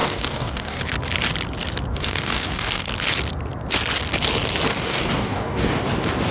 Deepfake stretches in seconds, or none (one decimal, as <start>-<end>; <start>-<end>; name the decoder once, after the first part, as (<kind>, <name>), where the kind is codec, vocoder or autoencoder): 0.0-0.8 (codec, DAC); 1.9-2.9; 4.7-5.8